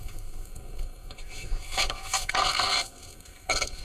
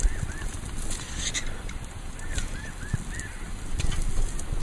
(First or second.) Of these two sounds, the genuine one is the second